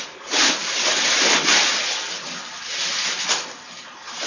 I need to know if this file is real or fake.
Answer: real